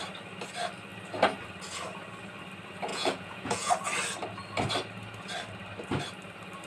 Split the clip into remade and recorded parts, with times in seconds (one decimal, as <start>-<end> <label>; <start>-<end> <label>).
0.0-2.9 recorded; 2.9-3.7 remade; 3.7-6.7 recorded